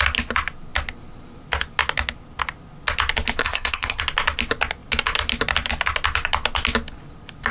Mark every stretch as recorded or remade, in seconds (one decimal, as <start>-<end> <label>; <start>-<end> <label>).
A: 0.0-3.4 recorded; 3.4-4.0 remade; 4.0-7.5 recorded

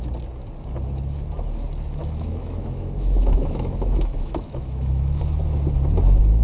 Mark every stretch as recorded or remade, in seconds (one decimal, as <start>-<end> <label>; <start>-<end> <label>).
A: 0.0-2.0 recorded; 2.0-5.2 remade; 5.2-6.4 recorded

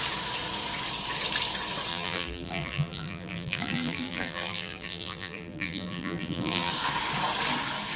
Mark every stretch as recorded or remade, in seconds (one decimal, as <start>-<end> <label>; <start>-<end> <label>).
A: 0.0-1.9 recorded; 1.9-6.7 remade; 6.7-8.0 recorded

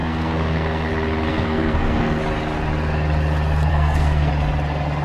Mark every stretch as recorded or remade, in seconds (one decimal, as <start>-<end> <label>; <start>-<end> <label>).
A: 0.0-0.9 remade; 0.9-1.3 recorded; 1.3-2.2 remade; 2.2-3.7 recorded; 3.7-4.3 remade; 4.3-5.0 recorded

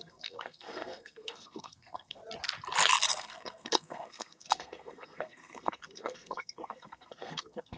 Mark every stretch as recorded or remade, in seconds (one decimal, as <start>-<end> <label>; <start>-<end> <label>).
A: 0.0-2.2 remade; 2.2-3.2 recorded; 3.2-7.8 remade